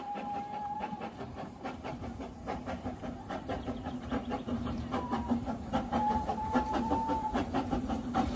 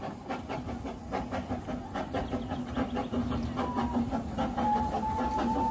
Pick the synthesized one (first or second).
first